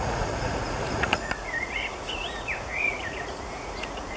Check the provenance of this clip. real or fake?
fake